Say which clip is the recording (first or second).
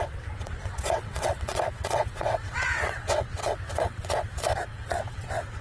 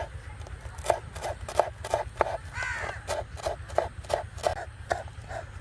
second